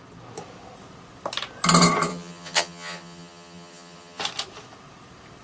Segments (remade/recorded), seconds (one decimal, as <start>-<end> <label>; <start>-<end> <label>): 0.0-2.1 recorded; 2.1-4.2 remade; 4.2-5.4 recorded